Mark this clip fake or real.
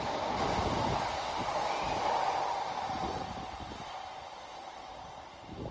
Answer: real